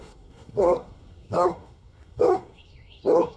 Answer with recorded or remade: remade